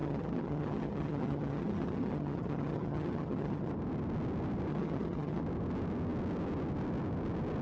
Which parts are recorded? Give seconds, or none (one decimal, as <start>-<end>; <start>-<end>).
3.7-4.7; 5.4-7.6